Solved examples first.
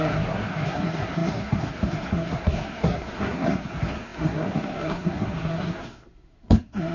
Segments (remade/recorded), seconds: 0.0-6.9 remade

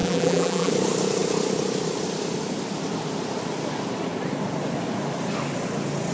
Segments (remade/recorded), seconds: 0.0-0.7 remade; 0.7-6.1 recorded

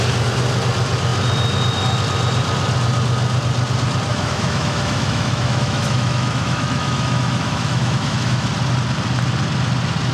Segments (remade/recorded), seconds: 0.0-4.1 recorded; 4.1-8.5 remade; 8.5-10.1 recorded

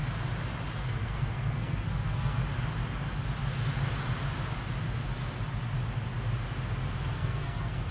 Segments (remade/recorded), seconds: 0.0-0.8 recorded; 0.8-2.4 remade; 2.4-7.1 recorded; 7.1-7.9 remade